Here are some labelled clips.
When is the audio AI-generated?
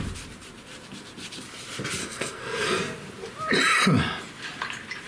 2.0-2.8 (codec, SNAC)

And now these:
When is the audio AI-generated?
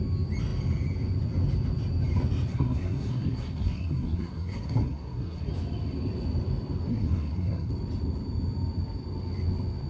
2.5-5.5 (codec, SNAC); 6.9-7.7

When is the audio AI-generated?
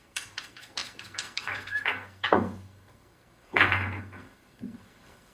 0.0-5.3 (codec, SNAC)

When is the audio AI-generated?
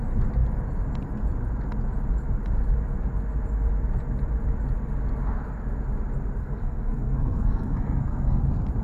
6.4-8.4 (codec, SNAC)